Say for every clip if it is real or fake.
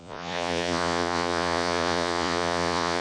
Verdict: fake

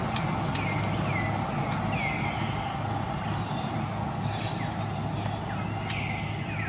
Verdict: real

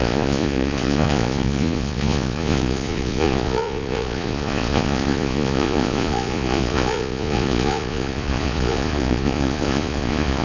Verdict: fake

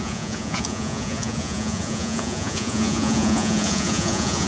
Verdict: fake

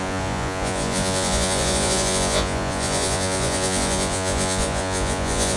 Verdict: fake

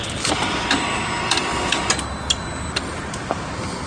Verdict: real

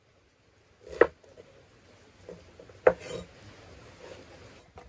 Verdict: real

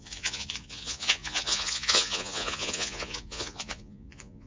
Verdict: fake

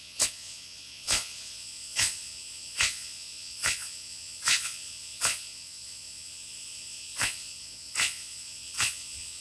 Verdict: fake